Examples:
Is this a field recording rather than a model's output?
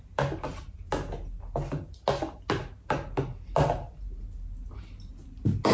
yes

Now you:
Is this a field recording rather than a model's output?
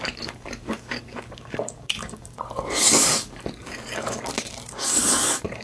no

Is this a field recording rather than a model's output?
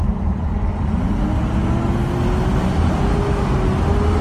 yes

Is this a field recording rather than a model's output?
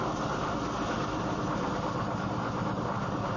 yes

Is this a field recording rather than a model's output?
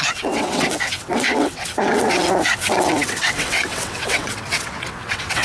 no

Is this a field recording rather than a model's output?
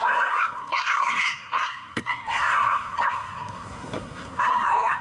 no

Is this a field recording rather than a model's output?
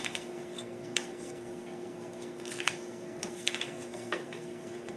no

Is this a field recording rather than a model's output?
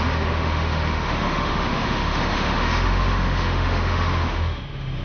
no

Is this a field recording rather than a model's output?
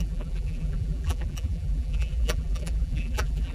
no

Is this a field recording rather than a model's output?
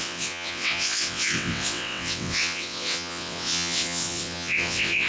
no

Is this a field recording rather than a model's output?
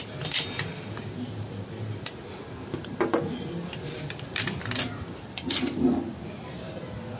yes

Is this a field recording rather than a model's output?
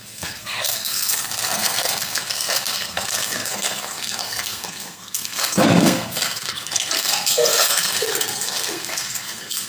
no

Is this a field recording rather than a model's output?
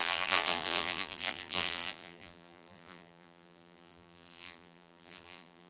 no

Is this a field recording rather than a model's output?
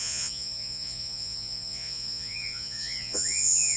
no